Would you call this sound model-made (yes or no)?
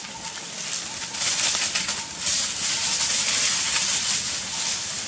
no